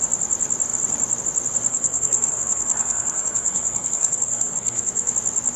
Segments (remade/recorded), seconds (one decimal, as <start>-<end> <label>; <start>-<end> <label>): 0.0-1.7 recorded; 1.7-5.1 remade; 5.1-5.6 recorded